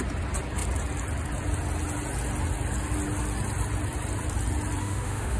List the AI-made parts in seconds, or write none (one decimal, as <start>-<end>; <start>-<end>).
4.8-5.4

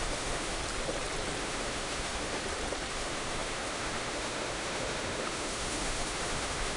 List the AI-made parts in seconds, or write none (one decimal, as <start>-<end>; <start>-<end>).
0.0-0.6; 1.4-2.4; 2.9-6.8

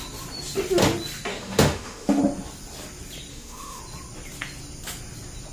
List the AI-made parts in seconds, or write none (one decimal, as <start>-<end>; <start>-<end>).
1.3-2.2; 3.3-3.8

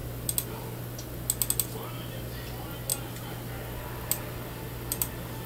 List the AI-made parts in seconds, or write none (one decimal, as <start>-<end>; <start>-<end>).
none

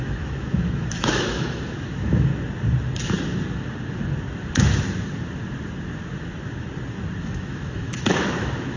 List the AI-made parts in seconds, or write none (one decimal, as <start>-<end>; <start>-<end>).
0.0-2.3; 7.2-8.8

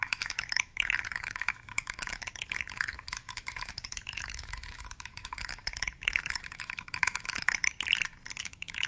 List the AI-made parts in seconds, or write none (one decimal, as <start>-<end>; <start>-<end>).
0.0-7.6; 8.4-8.9

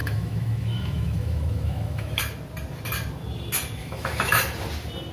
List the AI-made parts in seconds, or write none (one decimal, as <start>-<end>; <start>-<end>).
0.0-2.2; 3.8-4.4

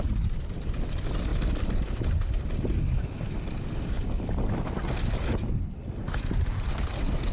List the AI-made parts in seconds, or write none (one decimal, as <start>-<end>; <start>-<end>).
none